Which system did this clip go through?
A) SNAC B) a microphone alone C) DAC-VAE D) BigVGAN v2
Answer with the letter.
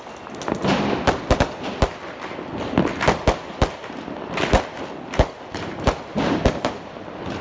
B